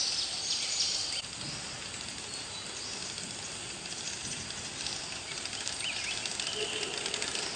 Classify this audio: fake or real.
real